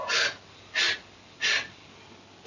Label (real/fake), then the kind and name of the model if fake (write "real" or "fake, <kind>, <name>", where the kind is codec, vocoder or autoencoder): real